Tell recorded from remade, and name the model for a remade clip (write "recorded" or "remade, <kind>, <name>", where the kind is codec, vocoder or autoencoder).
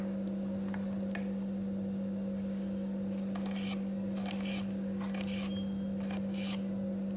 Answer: recorded